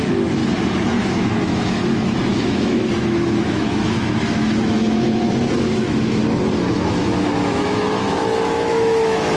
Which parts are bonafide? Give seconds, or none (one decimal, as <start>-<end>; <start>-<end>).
0.4-1.0; 5.2-5.8; 6.2-6.7